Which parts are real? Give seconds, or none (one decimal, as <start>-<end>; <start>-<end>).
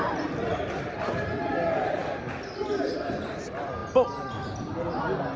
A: 2.0-2.7